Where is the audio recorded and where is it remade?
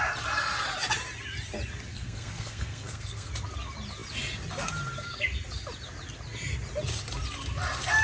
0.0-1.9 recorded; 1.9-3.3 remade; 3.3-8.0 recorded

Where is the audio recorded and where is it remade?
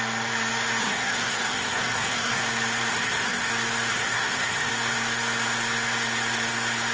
0.0-0.8 recorded; 0.8-2.4 remade; 2.4-2.9 recorded; 2.9-3.5 remade; 3.5-3.9 recorded; 3.9-4.7 remade; 4.7-6.9 recorded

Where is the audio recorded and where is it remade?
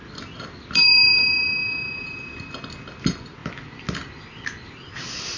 0.0-5.4 recorded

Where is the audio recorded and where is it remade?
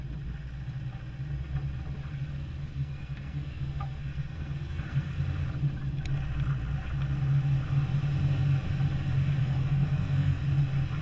0.0-2.6 recorded; 2.6-5.2 remade; 5.2-9.4 recorded; 9.4-10.4 remade; 10.4-11.0 recorded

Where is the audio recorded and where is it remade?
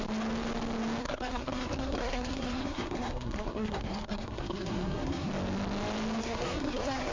0.0-1.0 recorded; 1.0-5.3 remade; 5.3-6.2 recorded; 6.2-7.1 remade